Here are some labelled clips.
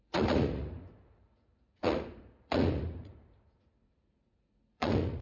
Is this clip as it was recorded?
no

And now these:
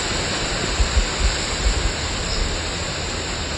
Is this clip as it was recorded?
yes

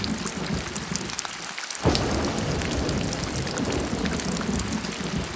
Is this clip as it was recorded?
yes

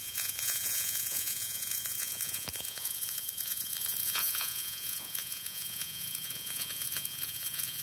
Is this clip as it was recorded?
no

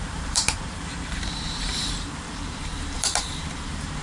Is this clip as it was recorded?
no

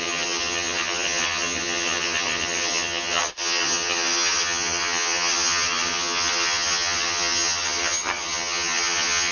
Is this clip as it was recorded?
no